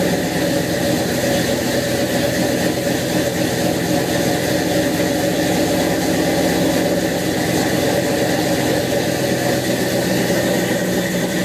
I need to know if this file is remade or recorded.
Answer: recorded